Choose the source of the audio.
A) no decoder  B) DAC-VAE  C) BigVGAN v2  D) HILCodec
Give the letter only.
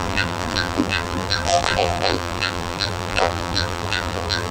C